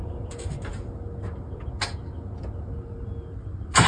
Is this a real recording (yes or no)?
yes